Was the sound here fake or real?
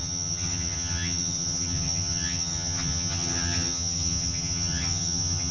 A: fake